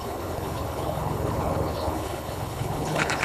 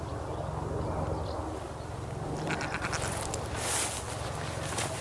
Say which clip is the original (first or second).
second